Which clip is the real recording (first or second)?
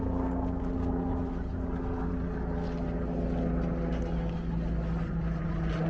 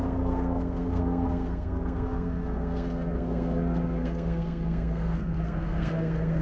first